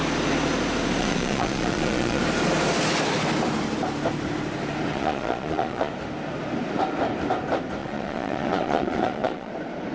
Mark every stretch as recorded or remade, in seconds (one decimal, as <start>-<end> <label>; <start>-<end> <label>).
0.0-1.0 recorded; 1.0-2.2 remade; 2.2-4.9 recorded; 4.9-5.9 remade; 5.9-7.8 recorded; 7.8-9.5 remade; 9.5-9.9 recorded